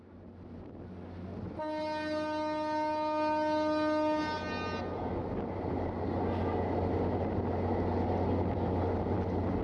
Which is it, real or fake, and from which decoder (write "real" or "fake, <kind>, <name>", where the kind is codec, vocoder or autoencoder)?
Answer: real